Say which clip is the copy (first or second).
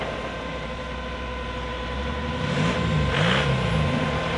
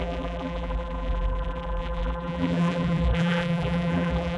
second